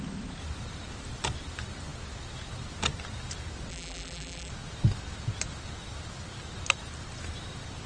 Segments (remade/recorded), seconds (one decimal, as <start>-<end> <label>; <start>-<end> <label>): 0.0-3.7 recorded; 3.7-4.5 remade; 4.5-7.9 recorded